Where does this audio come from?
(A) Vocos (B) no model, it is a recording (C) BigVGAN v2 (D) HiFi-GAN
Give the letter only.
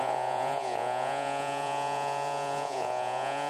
A